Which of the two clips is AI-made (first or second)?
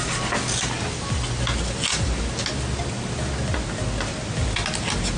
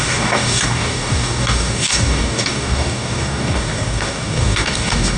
second